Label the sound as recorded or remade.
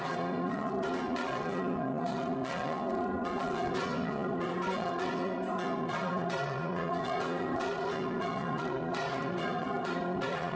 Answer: remade